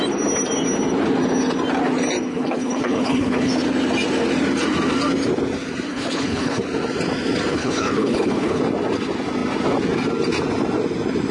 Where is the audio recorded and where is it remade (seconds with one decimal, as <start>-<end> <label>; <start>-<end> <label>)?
0.0-2.3 recorded; 2.3-3.5 remade; 3.5-5.9 recorded; 5.9-6.6 remade; 6.6-7.5 recorded; 7.5-8.6 remade; 8.6-11.3 recorded